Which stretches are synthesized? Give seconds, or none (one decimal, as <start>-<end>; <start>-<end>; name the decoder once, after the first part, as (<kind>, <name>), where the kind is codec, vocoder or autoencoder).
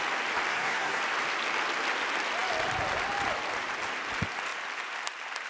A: 0.5-1.0 (codec, SNAC)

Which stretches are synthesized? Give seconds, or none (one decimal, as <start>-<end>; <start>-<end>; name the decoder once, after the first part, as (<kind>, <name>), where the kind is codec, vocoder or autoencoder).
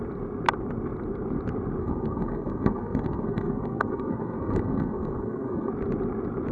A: 1.8-5.7 (codec, SNAC)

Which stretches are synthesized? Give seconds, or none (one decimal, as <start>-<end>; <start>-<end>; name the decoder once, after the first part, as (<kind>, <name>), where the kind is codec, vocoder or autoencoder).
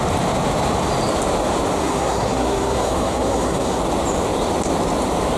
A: 1.8-3.8 (codec, SNAC)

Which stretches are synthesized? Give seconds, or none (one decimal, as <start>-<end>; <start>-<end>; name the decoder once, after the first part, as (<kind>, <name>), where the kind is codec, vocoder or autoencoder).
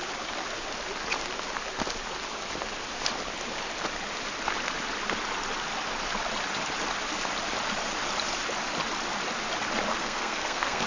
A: 9.9-10.9 (codec, SNAC)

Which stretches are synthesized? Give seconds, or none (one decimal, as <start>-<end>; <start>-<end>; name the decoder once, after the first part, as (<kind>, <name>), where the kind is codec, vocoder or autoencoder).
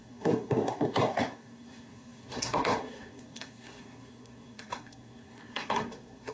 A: 0.0-6.3 (codec, SNAC)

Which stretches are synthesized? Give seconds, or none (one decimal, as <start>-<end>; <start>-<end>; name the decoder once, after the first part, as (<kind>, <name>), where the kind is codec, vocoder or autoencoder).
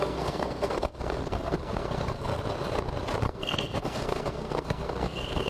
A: 0.0-2.3 (codec, SNAC); 3.2-5.5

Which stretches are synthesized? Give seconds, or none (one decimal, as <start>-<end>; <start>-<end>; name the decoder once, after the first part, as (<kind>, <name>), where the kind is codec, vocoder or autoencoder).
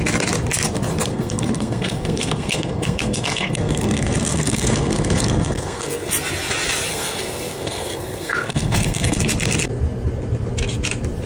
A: 1.1-6.1 (codec, SNAC); 6.9-9.2